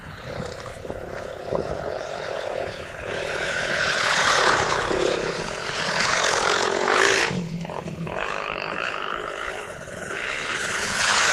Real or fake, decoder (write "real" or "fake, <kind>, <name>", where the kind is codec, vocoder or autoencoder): fake, codec, HILCodec